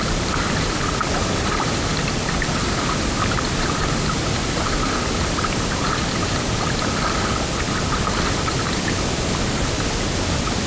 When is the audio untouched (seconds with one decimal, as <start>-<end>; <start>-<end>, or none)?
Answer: 0.0-10.7